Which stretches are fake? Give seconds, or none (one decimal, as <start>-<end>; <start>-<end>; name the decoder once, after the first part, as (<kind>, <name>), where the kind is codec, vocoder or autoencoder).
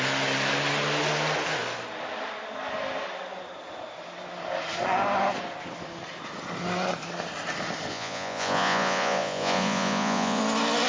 7.9-10.4 (vocoder, Vocos)